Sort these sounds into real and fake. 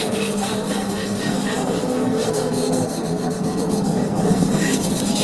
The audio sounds fake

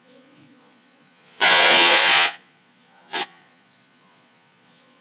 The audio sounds fake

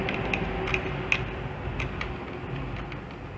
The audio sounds real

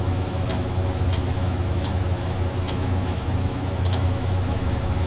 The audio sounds fake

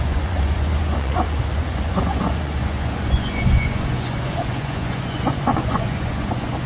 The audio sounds fake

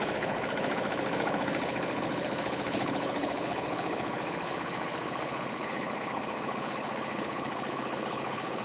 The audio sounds fake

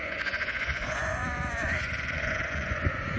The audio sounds fake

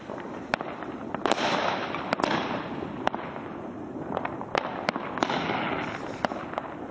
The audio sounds real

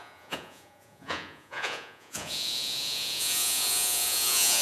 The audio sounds fake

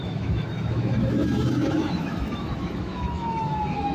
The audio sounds fake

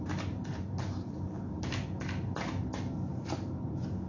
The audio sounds real